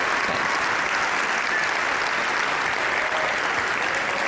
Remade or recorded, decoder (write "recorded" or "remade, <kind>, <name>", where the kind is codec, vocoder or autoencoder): recorded